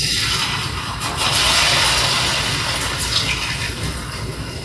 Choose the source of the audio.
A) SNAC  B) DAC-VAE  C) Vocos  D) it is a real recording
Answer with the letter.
D